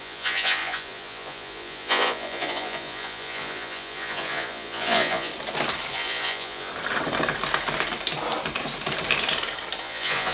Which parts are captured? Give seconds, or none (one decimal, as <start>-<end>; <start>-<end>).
5.3-5.9; 6.7-9.8